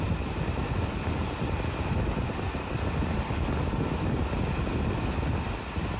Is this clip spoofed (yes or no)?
no